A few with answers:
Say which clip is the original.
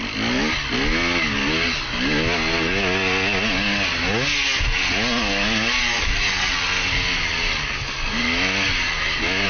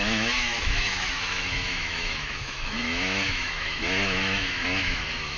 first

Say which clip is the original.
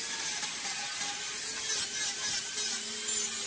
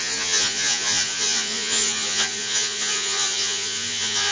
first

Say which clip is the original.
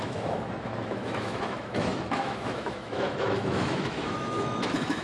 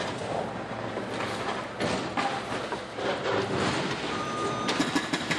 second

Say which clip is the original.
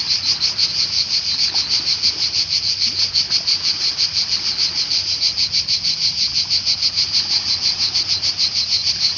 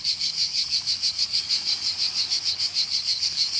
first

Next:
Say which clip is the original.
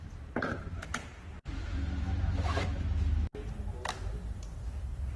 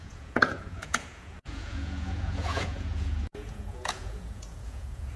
first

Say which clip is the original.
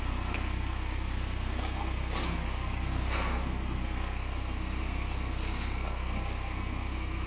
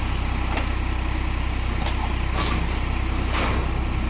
second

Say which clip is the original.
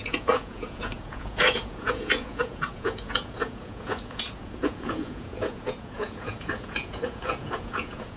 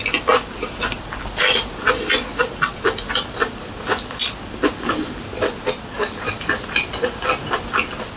second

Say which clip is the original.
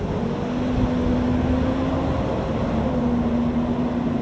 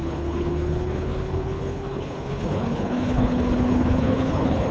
first